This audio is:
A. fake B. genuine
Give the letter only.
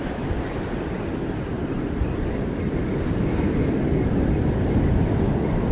B